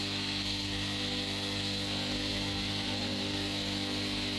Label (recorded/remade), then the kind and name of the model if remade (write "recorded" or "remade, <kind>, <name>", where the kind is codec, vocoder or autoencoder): remade, codec, SNAC